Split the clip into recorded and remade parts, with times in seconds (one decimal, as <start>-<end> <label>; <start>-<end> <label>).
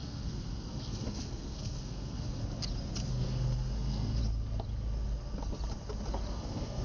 0.0-2.4 remade; 2.4-3.1 recorded; 3.1-4.2 remade; 4.2-6.3 recorded; 6.3-6.8 remade